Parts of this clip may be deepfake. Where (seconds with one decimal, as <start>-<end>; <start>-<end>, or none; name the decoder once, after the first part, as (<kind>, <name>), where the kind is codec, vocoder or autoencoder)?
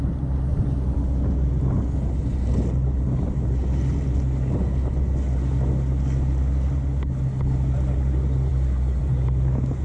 none